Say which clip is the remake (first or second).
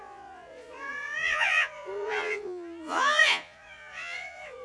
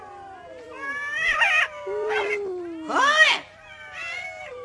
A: first